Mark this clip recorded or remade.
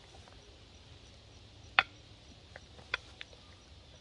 recorded